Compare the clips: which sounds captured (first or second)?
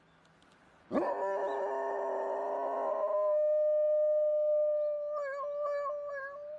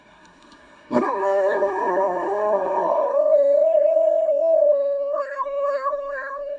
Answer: first